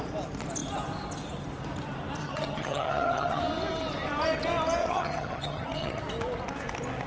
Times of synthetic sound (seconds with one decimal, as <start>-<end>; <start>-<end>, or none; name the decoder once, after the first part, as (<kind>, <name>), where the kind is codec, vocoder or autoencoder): 2.2-3.4 (vocoder, HiFi-GAN); 4.8-6.0